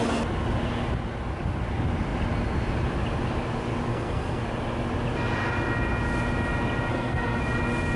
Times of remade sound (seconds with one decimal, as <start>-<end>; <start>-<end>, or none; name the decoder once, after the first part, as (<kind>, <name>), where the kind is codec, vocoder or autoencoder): 3.9-4.4 (codec, SNAC); 6.9-7.4